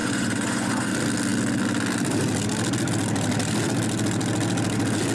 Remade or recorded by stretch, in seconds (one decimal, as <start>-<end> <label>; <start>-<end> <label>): 0.0-0.9 remade; 0.9-5.1 recorded

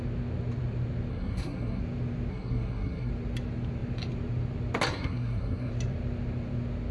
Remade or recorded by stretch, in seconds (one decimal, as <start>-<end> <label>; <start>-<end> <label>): 0.0-1.1 recorded; 1.1-1.8 remade; 1.8-2.3 recorded; 2.3-3.1 remade; 3.1-4.9 recorded; 4.9-5.7 remade; 5.7-6.9 recorded

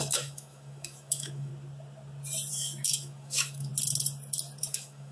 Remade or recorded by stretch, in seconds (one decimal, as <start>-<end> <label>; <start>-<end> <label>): 0.0-1.5 remade; 1.5-2.5 recorded; 2.5-3.7 remade; 3.7-4.6 recorded; 4.6-5.1 remade

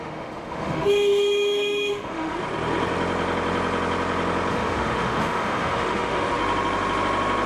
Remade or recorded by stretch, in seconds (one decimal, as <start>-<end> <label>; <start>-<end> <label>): 0.0-2.4 remade; 2.4-4.5 recorded; 4.5-6.4 remade; 6.4-7.5 recorded

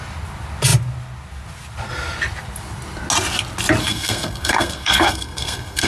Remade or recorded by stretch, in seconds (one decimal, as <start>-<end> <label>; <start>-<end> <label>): 0.0-3.8 recorded; 3.8-5.9 remade